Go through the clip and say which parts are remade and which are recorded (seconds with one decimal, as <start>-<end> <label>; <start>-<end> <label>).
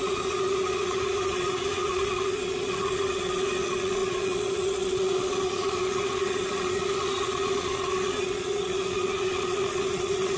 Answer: 0.0-10.4 remade